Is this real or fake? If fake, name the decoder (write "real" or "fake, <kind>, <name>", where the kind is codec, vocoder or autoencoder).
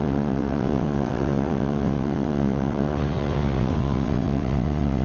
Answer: fake, vocoder, WaveNeXt